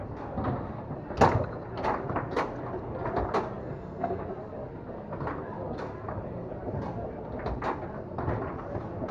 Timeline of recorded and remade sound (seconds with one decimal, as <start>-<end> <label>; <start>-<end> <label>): 0.0-3.6 recorded; 3.6-4.2 remade; 4.2-9.1 recorded